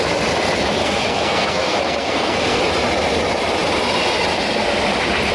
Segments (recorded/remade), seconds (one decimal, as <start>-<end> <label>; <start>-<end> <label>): 0.0-0.8 recorded; 0.8-2.6 remade; 2.6-5.3 recorded